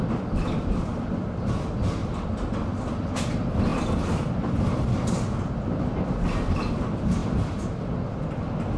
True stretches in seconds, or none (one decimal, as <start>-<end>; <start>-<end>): 0.0-2.0; 3.0-8.8